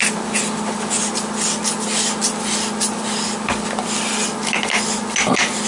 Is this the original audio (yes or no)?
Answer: yes